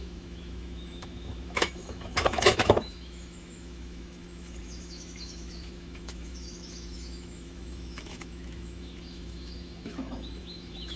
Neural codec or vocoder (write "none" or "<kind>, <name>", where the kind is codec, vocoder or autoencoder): autoencoder, DAC-VAE